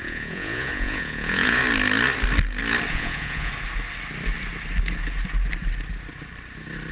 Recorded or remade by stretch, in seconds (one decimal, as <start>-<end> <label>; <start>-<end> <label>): 0.0-1.6 remade; 1.6-2.9 recorded; 2.9-3.5 remade; 3.5-6.9 recorded